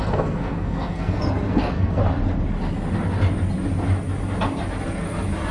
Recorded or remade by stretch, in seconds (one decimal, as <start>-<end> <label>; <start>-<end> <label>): 0.0-2.0 remade; 2.0-5.5 recorded